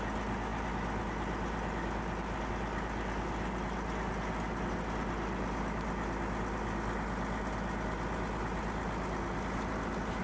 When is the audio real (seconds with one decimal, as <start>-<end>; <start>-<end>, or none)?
0.0-10.2